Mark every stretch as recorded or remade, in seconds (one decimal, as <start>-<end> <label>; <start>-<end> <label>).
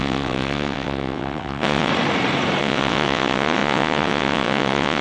0.0-1.9 remade; 1.9-2.6 recorded; 2.6-5.0 remade